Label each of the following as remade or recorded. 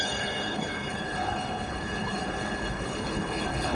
remade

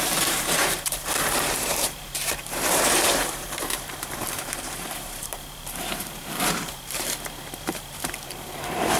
remade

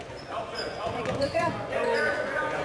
remade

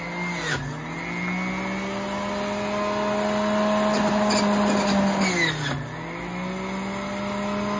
recorded